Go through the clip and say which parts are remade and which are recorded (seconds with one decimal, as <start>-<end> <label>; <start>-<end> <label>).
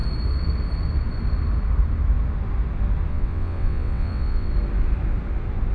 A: 0.0-3.1 recorded; 3.1-4.5 remade; 4.5-5.7 recorded